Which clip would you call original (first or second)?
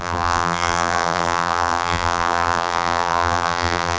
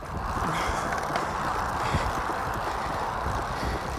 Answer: second